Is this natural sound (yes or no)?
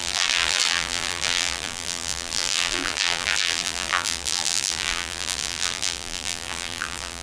no